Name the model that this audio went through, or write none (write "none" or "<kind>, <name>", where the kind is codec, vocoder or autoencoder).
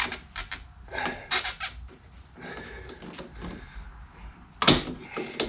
none